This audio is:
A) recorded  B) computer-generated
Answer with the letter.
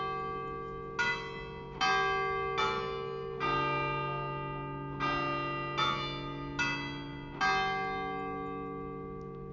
A